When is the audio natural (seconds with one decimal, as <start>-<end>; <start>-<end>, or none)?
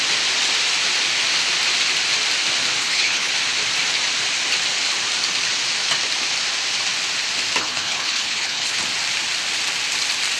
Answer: 0.0-2.8; 3.3-7.6; 8.8-10.4